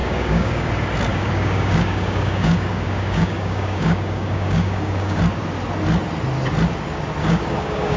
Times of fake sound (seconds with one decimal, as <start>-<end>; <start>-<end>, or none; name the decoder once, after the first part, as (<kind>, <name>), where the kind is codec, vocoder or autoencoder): 0.0-0.7 (codec, DAC); 1.1-5.2; 7.2-8.0